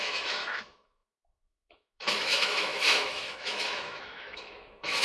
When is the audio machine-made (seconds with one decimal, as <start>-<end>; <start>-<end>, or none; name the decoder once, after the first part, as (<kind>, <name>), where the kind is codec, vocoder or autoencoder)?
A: 0.0-5.0 (autoencoder, DAC-VAE)